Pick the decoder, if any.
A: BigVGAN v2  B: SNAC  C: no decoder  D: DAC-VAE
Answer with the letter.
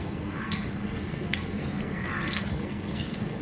B